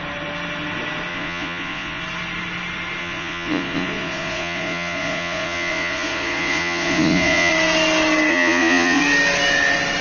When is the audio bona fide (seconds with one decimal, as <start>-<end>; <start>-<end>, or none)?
0.0-1.1; 2.0-3.0; 7.5-8.3; 9.0-10.0